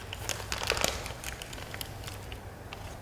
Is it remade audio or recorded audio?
recorded